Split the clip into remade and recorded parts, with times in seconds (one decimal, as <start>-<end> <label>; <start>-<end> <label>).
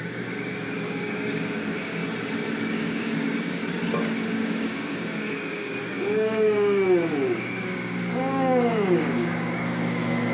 0.0-2.0 remade; 2.0-2.7 recorded; 2.7-3.6 remade; 3.6-4.3 recorded; 4.3-10.3 remade